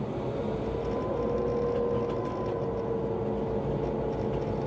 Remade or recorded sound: recorded